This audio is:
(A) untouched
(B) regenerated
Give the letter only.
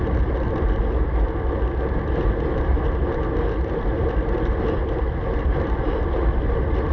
A